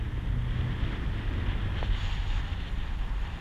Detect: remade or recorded recorded